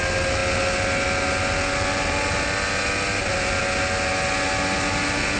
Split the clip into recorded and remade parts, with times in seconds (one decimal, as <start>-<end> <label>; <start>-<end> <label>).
0.0-5.4 recorded